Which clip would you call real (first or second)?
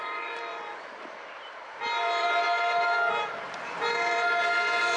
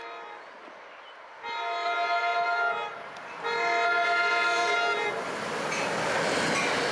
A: second